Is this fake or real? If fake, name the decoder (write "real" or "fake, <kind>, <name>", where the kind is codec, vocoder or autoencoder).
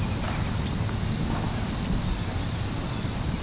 real